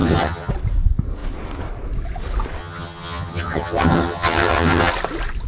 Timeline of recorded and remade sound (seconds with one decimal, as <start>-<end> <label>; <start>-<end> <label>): 0.0-0.5 remade; 0.5-2.6 recorded; 2.6-4.9 remade; 4.9-5.5 recorded